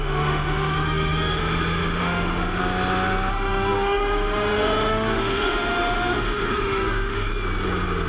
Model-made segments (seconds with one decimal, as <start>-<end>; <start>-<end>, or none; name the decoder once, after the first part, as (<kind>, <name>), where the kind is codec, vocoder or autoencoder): 0.0-2.6 (autoencoder, DAC-VAE); 3.3-7.3